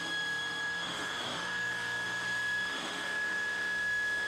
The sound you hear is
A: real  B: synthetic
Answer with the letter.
B